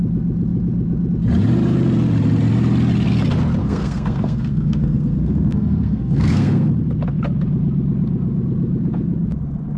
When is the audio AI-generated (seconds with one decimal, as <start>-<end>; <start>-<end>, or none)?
3.6-6.7